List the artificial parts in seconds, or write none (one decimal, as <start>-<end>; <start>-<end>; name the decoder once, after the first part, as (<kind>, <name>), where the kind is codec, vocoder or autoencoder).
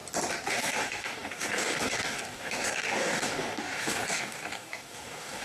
0.5-5.4 (codec, DAC)